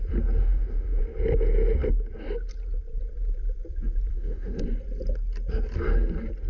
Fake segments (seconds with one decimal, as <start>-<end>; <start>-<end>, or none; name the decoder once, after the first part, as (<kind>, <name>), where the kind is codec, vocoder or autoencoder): 0.4-1.0 (autoencoder, DAC-VAE); 4.1-4.6